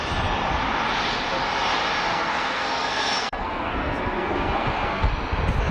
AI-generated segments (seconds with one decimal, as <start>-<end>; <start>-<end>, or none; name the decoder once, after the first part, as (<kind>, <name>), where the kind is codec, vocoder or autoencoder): 2.1-5.1 (codec, SNAC)